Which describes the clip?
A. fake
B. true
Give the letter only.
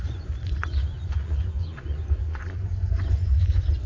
A